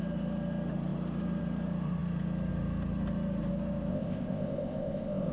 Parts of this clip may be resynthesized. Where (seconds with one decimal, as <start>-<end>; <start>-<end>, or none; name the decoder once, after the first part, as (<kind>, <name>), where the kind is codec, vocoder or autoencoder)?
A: 3.9-5.3 (codec, ZipCodec)

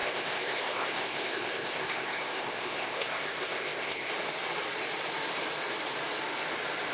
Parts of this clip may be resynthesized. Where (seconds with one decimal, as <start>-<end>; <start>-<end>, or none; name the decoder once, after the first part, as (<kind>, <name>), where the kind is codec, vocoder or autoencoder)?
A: 0.0-4.1 (codec, ZipCodec)

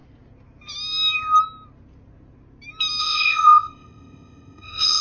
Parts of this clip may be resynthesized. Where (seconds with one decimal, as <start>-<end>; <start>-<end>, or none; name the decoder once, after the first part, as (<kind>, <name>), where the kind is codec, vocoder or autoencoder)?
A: 3.0-5.0 (codec, ZipCodec)

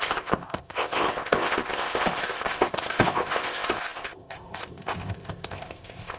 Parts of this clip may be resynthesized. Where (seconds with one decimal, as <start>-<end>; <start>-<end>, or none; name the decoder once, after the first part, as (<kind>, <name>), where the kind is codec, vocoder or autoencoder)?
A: 0.0-6.2 (codec, ZipCodec)

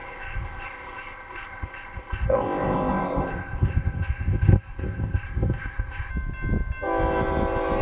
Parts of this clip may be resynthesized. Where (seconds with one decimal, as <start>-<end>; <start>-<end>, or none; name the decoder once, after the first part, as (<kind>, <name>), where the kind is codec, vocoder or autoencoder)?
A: 0.0-6.1 (codec, ZipCodec)

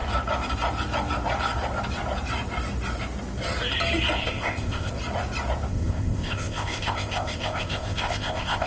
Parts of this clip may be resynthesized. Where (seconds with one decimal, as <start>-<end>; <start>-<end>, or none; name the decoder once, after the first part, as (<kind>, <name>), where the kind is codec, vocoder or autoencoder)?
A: 4.2-4.9 (codec, ZipCodec); 5.7-8.7